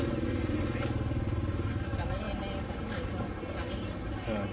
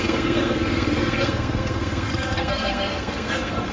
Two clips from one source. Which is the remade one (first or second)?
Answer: second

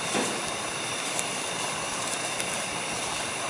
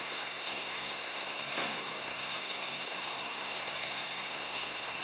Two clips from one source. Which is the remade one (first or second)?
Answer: second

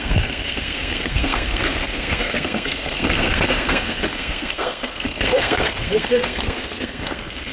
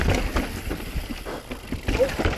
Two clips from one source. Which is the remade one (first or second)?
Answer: first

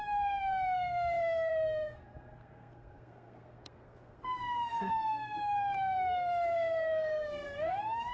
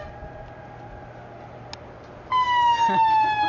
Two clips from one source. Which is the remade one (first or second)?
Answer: first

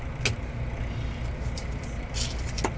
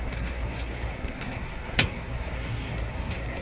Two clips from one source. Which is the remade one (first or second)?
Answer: second